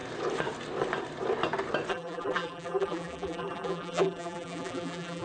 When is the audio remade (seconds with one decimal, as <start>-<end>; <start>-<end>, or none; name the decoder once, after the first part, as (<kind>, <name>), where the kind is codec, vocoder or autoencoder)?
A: 1.9-5.2 (vocoder, BigVGAN v2)